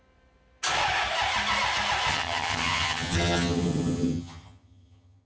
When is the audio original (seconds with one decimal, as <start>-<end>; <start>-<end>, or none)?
0.0-2.1

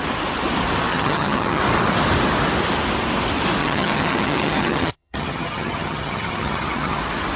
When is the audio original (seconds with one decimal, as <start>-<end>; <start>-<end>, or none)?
0.0-0.9; 1.6-3.6; 7.0-7.4

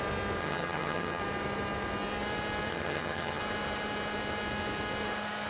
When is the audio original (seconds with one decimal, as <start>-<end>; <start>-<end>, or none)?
0.0-0.4; 1.2-2.7; 3.4-5.5

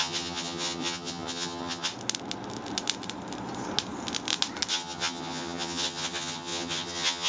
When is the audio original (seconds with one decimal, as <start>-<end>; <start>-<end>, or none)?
1.9-4.7